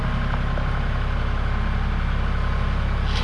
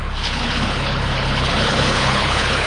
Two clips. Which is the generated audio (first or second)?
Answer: second